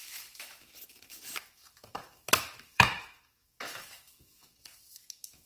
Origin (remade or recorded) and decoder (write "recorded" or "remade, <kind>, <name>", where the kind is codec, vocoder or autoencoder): remade, autoencoder, DAC-VAE